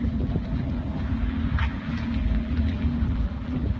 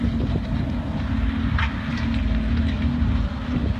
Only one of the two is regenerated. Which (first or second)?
first